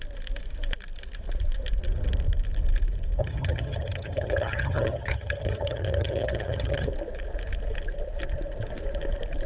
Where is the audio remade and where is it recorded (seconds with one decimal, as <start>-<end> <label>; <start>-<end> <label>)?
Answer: 0.0-3.2 recorded; 3.2-6.9 remade; 6.9-9.5 recorded